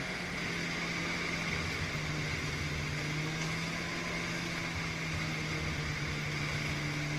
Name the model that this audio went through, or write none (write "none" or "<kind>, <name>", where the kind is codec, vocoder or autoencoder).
none